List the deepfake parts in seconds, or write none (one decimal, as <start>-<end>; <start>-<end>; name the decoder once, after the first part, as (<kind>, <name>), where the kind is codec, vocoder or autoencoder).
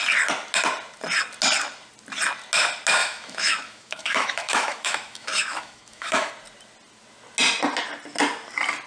3.0-6.3 (autoencoder, DAC-VAE)